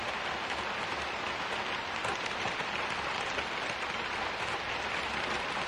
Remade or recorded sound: recorded